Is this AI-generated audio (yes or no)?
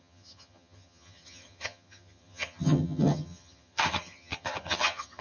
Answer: yes